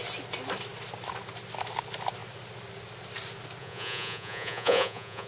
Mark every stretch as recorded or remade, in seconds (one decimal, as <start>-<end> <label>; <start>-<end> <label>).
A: 0.0-3.6 recorded; 3.6-5.3 remade